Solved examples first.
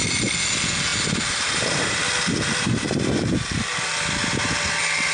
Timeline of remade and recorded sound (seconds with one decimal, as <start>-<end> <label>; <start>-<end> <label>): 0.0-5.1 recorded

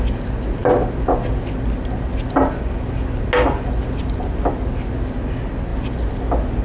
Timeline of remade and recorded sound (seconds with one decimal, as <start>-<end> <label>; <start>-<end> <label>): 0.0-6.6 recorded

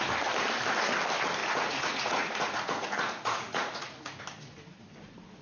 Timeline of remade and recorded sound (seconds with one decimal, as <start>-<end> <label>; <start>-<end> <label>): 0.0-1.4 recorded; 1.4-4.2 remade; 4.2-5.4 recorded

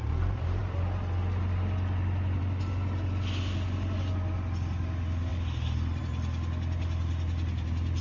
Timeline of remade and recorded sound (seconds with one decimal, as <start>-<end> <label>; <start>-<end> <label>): 0.0-8.0 recorded

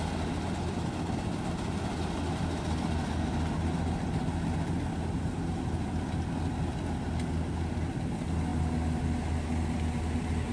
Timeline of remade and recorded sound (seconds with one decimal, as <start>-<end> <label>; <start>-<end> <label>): 0.0-10.5 recorded

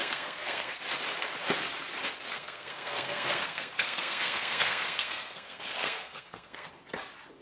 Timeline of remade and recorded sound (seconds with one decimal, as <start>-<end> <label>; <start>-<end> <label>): 0.0-0.8 remade; 0.8-2.3 recorded; 2.3-6.7 remade; 6.7-7.4 recorded